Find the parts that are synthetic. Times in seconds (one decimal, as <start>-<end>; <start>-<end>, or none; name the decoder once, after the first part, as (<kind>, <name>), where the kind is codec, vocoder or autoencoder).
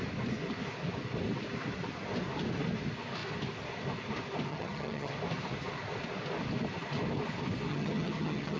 4.5-5.1 (vocoder, HiFi-GAN); 7.7-8.6